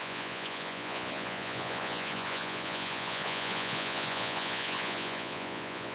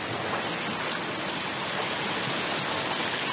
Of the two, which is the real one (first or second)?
second